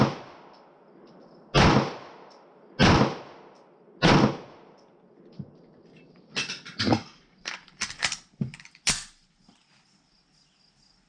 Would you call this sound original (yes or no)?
yes